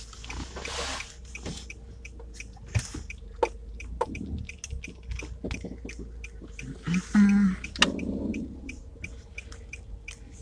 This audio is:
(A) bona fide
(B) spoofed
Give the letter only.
A